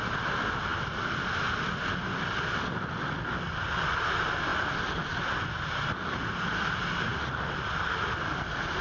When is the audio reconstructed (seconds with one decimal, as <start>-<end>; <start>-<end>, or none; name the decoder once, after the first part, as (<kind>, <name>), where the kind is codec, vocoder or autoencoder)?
none